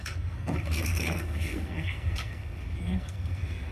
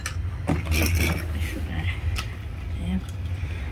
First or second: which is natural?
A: second